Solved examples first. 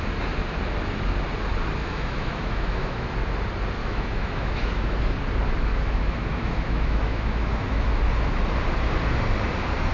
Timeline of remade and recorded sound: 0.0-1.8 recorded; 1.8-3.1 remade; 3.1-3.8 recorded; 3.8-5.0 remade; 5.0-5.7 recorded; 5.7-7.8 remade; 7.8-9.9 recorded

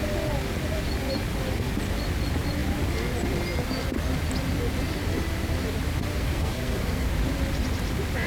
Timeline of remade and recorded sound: 0.0-6.1 recorded; 6.1-7.1 remade; 7.1-8.3 recorded

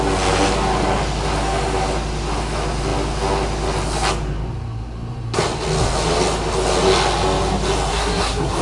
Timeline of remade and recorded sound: 0.0-7.9 recorded; 7.9-8.6 remade

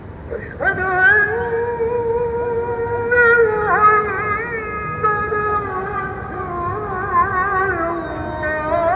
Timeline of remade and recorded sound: 0.0-9.0 recorded

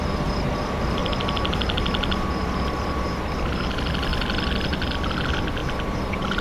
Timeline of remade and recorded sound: 0.0-1.0 remade; 1.0-2.6 recorded; 2.6-4.1 remade; 4.1-5.1 recorded; 5.1-5.6 remade; 5.6-6.4 recorded

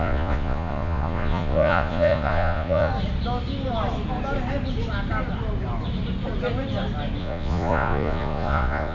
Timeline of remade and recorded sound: 0.0-2.9 remade; 2.9-7.2 recorded; 7.2-8.9 remade

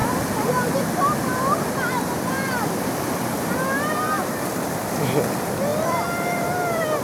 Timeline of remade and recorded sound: 0.0-0.6 remade; 0.6-5.7 recorded; 5.7-7.0 remade

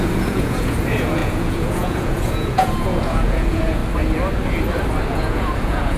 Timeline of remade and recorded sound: 0.0-3.8 remade; 3.8-5.1 recorded; 5.1-6.0 remade